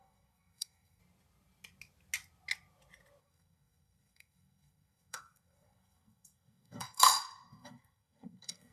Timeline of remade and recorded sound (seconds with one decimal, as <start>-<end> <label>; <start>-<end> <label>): 0.0-1.0 remade; 1.0-3.2 recorded; 3.2-8.7 remade